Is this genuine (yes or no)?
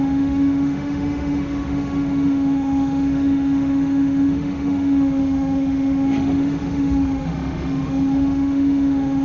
no